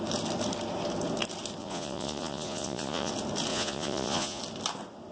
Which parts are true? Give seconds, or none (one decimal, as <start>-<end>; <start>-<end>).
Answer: 0.0-1.6; 3.1-3.5; 4.4-5.1